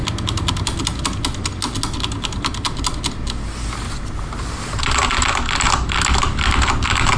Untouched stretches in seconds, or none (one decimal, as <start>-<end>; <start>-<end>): 0.0-7.2